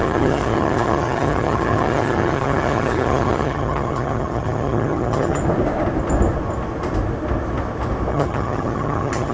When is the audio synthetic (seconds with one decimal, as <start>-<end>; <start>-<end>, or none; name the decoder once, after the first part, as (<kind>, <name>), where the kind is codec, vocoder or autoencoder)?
0.0-5.4 (vocoder, HiFi-GAN); 8.1-9.3